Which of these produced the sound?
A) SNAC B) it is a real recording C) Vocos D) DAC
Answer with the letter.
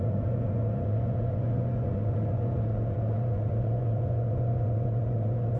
C